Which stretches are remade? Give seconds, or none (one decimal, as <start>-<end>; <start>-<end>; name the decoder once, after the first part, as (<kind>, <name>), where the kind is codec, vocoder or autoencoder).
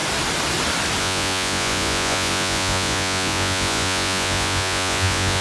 1.0-5.4 (vocoder, Vocos)